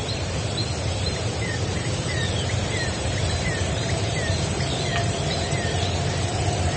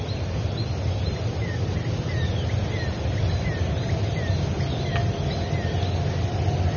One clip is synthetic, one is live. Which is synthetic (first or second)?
first